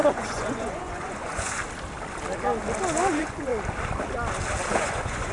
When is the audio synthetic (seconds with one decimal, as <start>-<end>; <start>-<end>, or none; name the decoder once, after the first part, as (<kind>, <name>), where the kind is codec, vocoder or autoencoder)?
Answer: 0.0-1.6 (vocoder, Vocos); 3.1-3.5; 4.7-5.3